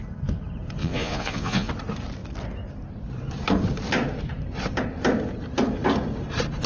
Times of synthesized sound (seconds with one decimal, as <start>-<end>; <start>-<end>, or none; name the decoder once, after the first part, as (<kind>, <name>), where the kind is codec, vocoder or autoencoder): 0.8-1.7 (vocoder, Vocos)